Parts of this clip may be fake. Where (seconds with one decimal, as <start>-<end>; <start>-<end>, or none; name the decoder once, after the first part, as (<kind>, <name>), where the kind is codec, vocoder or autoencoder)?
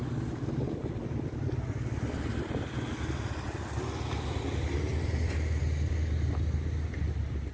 4.9-5.6 (vocoder, BigVGAN v2)